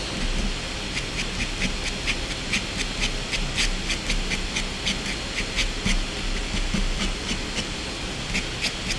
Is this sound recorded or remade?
recorded